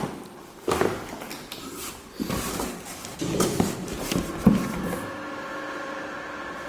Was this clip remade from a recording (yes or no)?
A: no